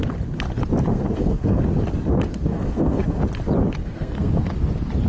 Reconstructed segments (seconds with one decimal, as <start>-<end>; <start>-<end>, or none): 0.9-1.6; 2.5-3.2; 3.8-4.3